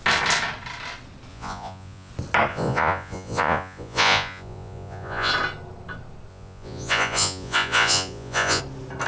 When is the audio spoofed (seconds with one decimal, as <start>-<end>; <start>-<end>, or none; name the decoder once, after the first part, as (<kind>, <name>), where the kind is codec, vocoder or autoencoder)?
1.3-2.1 (vocoder, Vocos); 2.5-5.3; 6.3-8.6